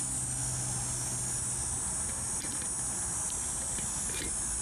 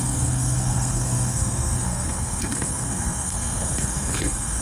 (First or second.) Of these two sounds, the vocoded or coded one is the second